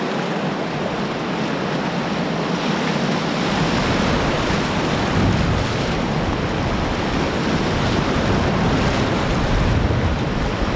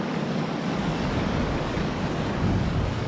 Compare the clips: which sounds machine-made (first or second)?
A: second